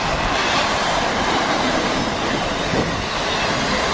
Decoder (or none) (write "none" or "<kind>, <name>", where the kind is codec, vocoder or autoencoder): none